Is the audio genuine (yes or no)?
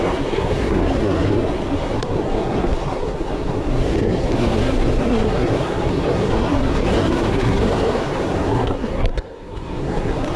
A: no